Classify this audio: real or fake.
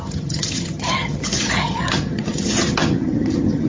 fake